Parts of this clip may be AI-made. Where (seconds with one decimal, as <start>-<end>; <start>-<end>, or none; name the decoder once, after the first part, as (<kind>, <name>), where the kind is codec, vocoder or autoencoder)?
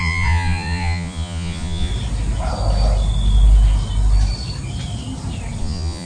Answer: 0.0-1.9 (vocoder, Vocos); 5.6-6.1